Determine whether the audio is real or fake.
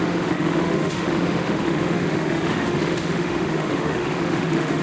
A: fake